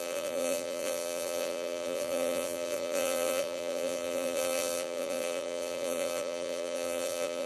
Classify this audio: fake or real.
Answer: fake